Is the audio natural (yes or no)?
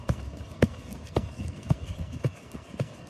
no